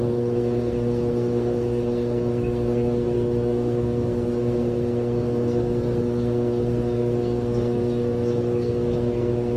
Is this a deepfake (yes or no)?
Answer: yes